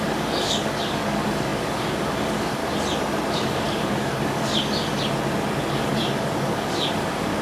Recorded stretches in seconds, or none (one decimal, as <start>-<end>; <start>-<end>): 2.6-3.3; 4.6-5.7